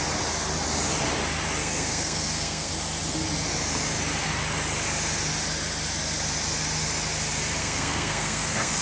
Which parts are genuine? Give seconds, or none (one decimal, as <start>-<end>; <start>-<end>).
0.0-1.6; 2.7-7.6